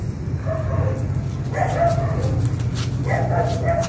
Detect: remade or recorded recorded